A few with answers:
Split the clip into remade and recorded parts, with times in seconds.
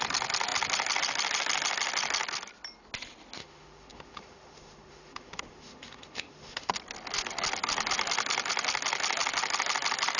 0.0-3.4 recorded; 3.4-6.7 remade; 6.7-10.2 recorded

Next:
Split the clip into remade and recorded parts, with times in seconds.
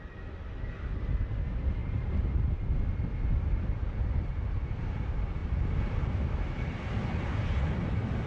0.0-8.3 recorded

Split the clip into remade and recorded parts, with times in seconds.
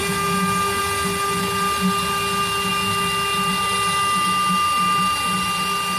0.0-6.0 recorded